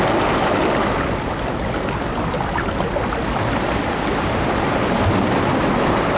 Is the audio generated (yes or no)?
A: no